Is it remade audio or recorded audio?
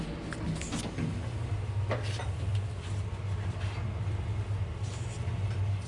recorded